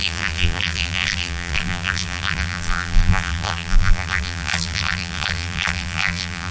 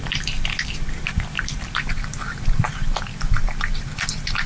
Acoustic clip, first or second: second